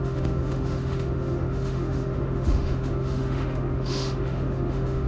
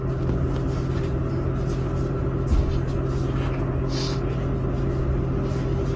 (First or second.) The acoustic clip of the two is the second